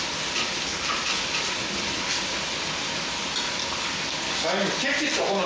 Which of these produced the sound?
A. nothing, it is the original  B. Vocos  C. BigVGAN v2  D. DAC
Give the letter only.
A